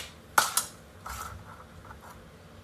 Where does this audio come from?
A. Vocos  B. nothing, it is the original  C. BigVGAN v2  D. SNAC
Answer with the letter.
B